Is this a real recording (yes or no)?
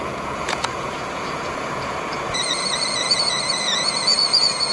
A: no